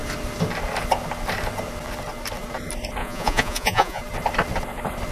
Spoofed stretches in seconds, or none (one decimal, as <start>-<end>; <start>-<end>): 3.0-4.0